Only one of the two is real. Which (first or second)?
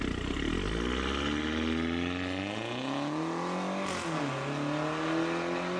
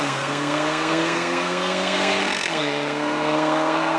first